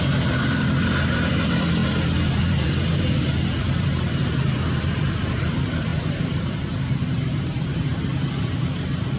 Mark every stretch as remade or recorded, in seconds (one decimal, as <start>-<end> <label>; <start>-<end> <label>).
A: 0.0-1.8 remade; 1.8-2.4 recorded; 2.4-7.9 remade; 7.9-8.4 recorded; 8.4-9.2 remade